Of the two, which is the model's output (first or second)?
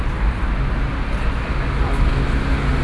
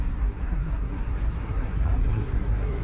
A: second